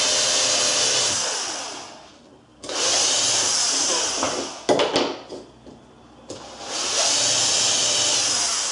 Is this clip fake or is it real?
real